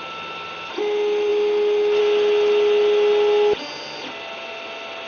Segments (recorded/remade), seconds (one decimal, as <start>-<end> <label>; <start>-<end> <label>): 0.0-5.1 recorded